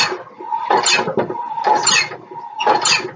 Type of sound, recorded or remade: recorded